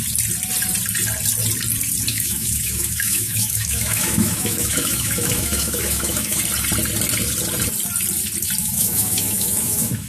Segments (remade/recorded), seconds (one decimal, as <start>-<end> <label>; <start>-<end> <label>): 0.0-2.1 recorded; 2.1-6.4 remade; 6.4-8.6 recorded; 8.6-10.1 remade